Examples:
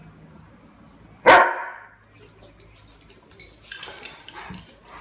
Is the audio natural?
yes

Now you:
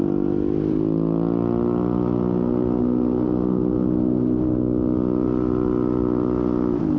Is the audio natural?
yes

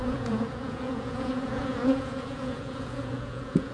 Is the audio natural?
no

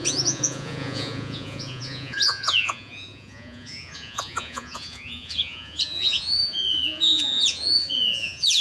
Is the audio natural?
no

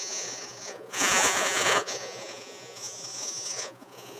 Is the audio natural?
no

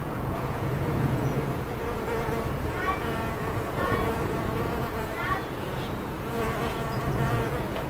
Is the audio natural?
no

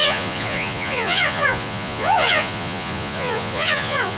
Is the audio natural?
no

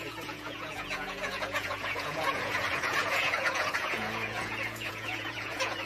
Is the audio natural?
no